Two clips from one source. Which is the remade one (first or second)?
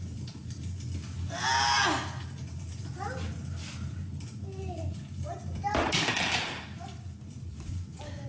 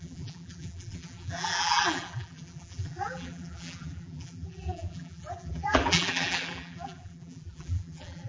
second